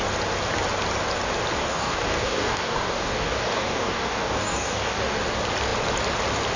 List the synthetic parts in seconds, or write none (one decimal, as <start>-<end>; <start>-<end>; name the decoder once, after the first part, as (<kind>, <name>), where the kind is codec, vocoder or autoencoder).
1.6-5.2 (codec, DAC)